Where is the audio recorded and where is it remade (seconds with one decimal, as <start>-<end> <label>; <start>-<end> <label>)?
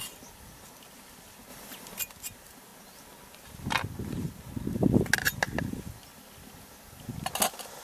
0.0-1.5 recorded; 1.5-2.0 remade; 2.0-7.8 recorded